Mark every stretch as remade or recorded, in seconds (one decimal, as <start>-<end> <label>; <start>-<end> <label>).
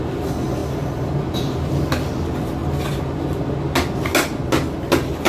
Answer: 0.0-5.3 recorded